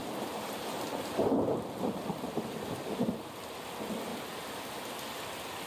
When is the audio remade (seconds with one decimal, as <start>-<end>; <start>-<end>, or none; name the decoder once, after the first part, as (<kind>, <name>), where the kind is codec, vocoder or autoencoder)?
0.0-0.8 (vocoder, BigVGAN v2)